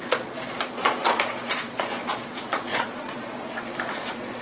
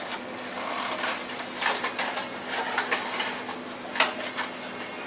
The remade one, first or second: first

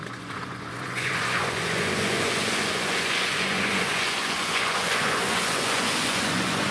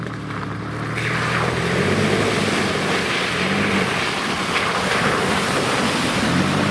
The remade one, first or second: first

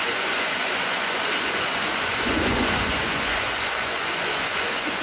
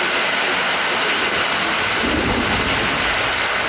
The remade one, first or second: first